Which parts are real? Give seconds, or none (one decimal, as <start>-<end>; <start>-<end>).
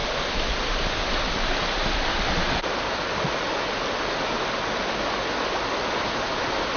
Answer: 0.0-6.8